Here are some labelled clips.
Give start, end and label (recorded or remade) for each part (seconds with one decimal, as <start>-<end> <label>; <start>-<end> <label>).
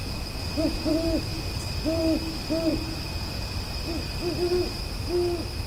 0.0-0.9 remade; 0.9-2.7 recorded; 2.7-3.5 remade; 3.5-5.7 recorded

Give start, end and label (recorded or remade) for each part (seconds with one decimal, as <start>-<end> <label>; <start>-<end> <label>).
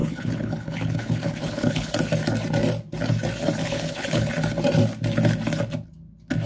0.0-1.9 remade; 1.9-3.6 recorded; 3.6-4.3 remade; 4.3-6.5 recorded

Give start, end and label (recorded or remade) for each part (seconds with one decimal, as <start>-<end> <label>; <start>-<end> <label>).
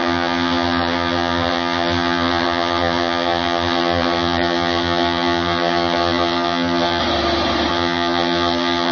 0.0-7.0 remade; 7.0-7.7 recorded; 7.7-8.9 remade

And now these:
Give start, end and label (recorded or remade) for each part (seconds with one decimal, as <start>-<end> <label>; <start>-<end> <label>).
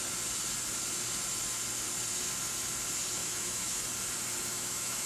0.0-3.2 recorded; 3.2-3.8 remade; 3.8-4.5 recorded; 4.5-5.1 remade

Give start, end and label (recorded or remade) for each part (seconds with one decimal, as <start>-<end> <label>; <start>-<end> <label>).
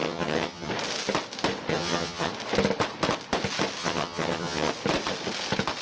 0.0-0.7 remade; 0.7-1.7 recorded; 1.7-2.3 remade; 2.3-3.8 recorded; 3.8-4.7 remade; 4.7-5.8 recorded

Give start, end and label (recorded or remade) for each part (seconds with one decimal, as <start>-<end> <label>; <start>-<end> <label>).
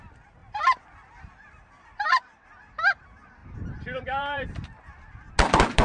0.0-0.4 recorded; 0.4-2.7 remade; 2.7-3.4 recorded; 3.4-5.3 remade; 5.3-5.8 recorded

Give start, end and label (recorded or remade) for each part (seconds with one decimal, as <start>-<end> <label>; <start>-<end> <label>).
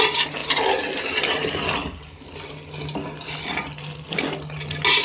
0.0-5.0 recorded